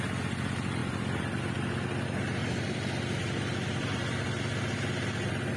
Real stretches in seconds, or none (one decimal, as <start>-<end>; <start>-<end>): 0.0-0.8; 1.4-2.4; 4.4-5.6